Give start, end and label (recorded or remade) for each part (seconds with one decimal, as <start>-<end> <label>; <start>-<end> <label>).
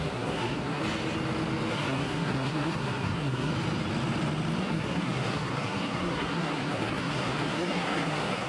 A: 0.0-0.8 remade; 0.8-1.7 recorded; 1.7-3.5 remade; 3.5-4.6 recorded; 4.6-8.5 remade